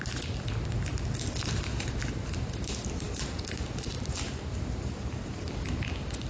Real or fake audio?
real